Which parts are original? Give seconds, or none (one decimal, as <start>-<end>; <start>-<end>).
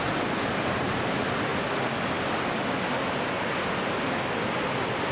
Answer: 0.0-5.1